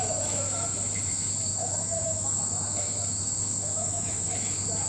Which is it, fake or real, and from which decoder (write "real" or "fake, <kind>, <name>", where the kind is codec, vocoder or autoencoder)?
fake, autoencoder, DAC-VAE